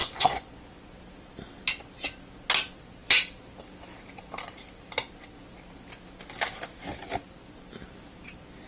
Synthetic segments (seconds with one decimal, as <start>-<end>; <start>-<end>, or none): 0.0-0.6